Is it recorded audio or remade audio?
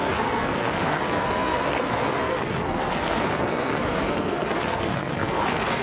remade